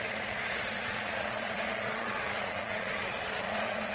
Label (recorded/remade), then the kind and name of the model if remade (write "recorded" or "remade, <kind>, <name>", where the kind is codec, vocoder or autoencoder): remade, vocoder, Vocos